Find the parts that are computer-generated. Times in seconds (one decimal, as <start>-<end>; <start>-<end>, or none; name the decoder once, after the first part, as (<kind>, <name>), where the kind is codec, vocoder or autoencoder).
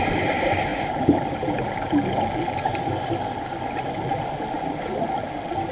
none